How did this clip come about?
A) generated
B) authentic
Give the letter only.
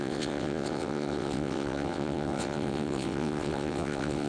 A